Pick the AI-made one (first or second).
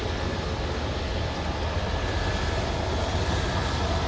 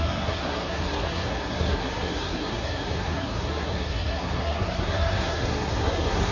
second